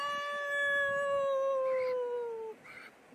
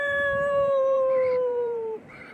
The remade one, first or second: second